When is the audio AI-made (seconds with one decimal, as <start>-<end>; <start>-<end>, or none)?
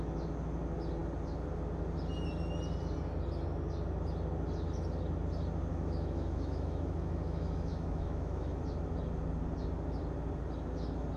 5.7-8.6